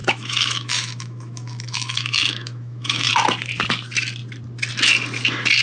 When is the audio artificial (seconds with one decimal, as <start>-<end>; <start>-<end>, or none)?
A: 0.0-3.1